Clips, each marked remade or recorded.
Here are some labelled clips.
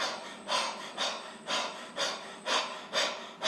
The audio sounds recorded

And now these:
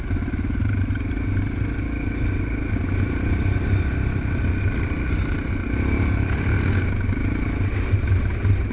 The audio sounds recorded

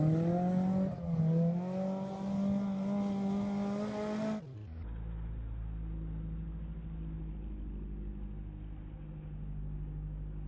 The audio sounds recorded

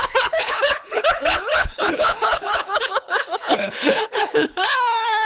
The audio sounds remade